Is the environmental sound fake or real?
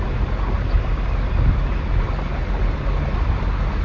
real